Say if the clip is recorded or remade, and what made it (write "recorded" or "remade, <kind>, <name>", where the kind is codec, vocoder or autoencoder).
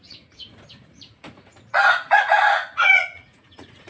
remade, vocoder, Vocos